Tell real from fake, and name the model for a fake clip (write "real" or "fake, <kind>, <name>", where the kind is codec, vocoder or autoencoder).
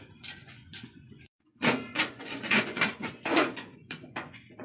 fake, vocoder, Vocos